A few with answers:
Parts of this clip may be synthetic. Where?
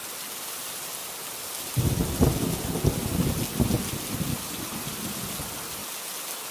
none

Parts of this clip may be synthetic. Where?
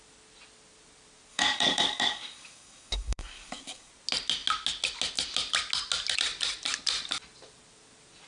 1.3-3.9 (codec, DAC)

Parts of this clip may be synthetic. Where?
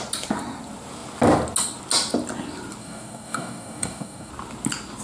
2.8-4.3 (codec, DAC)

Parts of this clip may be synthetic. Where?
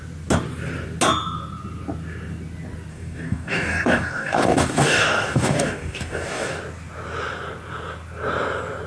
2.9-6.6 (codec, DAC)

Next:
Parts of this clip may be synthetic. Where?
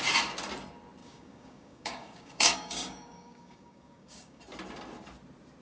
1.0-4.4 (codec, DAC)